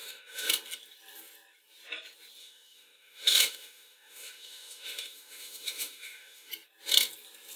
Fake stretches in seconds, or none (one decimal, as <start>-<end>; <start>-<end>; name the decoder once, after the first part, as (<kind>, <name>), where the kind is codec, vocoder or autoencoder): 0.0-0.5 (autoencoder, DAC-VAE); 2.4-6.5